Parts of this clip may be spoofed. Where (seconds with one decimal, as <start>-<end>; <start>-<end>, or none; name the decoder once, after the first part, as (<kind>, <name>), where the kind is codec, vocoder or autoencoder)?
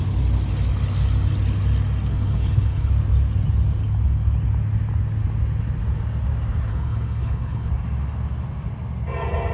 2.1-2.9 (codec, HILCodec); 6.7-7.7